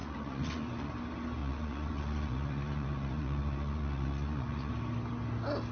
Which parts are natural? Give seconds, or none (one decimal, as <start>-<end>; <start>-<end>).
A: 0.9-1.4; 4.7-5.7